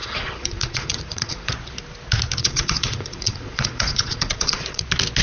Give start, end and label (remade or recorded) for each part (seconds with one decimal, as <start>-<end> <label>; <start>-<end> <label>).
0.0-1.5 remade; 1.5-2.4 recorded; 2.4-4.8 remade; 4.8-5.2 recorded